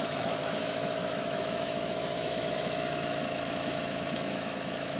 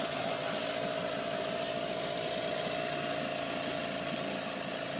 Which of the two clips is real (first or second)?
second